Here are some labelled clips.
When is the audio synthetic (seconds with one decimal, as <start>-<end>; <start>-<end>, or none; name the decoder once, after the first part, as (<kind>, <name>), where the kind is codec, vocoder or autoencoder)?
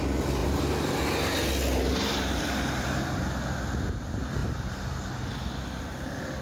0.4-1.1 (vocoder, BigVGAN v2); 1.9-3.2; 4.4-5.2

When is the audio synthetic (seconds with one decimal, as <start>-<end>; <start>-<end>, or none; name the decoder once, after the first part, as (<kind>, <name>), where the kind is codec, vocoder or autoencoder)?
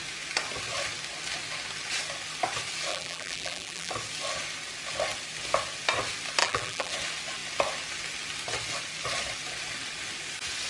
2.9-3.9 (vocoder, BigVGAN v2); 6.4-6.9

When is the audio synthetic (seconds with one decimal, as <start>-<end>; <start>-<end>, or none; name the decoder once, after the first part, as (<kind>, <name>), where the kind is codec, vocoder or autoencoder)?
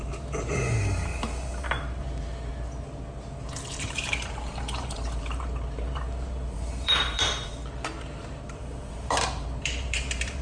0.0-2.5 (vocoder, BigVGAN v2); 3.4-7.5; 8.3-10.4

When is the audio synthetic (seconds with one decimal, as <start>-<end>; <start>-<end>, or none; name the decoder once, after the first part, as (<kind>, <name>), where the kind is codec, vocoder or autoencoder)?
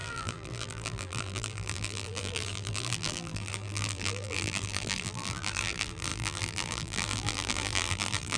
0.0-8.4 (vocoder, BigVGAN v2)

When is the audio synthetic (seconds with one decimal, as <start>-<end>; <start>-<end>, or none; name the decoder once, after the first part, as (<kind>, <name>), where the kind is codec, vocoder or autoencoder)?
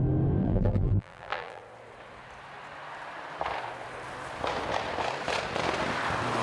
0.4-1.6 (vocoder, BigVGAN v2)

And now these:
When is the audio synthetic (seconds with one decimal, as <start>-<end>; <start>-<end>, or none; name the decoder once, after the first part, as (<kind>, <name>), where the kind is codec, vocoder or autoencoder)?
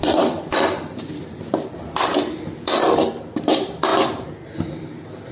0.0-2.1 (vocoder, BigVGAN v2); 2.8-3.9